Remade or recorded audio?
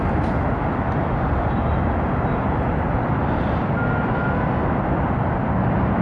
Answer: recorded